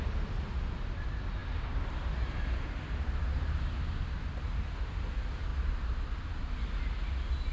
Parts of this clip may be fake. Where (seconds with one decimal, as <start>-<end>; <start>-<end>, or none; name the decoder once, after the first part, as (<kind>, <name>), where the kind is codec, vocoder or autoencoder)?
none